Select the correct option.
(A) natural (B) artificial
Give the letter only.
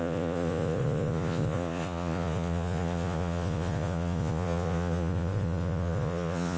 B